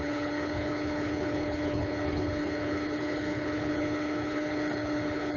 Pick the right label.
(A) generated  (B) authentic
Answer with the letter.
A